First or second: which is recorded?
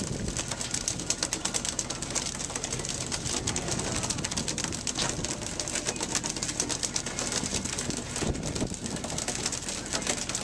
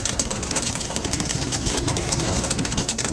first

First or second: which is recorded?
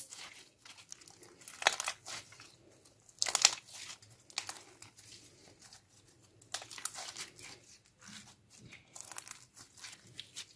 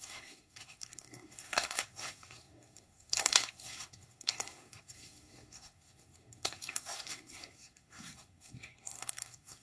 first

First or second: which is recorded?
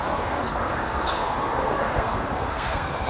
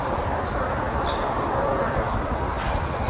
second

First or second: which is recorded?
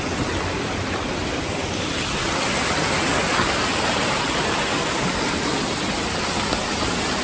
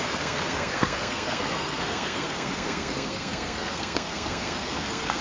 first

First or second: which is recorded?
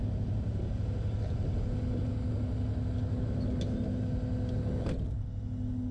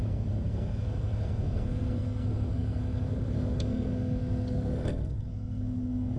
first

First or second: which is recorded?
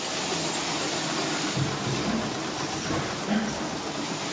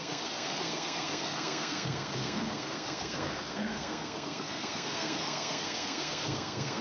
first